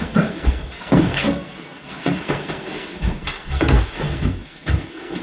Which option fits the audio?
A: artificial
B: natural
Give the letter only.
A